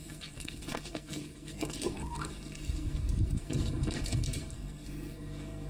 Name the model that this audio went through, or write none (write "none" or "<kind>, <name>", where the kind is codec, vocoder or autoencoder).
codec, SNAC